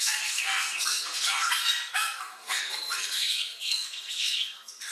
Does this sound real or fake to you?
fake